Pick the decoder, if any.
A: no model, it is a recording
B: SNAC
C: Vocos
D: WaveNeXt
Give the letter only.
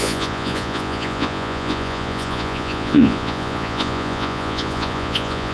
C